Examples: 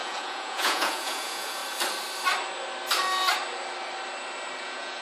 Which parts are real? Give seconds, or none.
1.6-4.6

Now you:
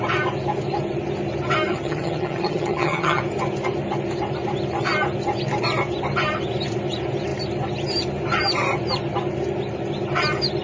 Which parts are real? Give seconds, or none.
0.0-1.7; 3.2-10.6